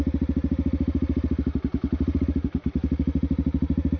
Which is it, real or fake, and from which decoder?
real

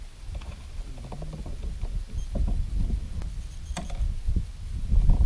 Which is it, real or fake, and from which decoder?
real